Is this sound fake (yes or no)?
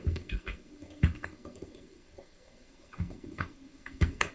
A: yes